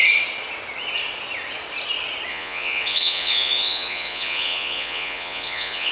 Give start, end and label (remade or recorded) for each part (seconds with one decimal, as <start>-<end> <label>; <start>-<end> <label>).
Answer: 0.0-2.3 recorded; 2.3-5.9 remade